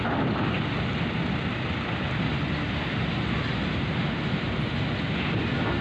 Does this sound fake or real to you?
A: real